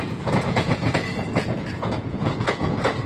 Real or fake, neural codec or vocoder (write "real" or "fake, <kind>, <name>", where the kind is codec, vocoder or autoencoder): fake, vocoder, Vocos